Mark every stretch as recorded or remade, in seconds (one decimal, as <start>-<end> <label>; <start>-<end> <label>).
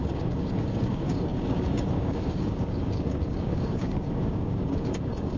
0.0-5.4 remade